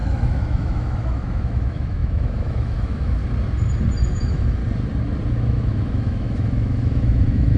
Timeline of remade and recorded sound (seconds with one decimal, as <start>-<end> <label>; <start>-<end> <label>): 0.0-3.2 remade; 3.2-4.1 recorded; 4.1-4.6 remade; 4.6-5.3 recorded; 5.3-7.6 remade